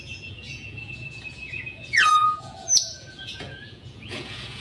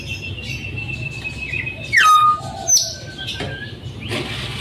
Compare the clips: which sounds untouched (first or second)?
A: second